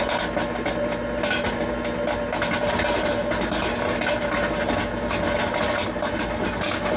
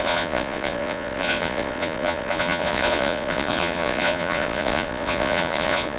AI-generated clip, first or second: second